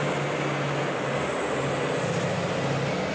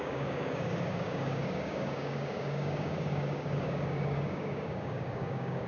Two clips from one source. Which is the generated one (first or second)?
second